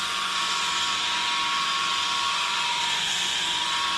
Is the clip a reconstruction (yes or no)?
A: yes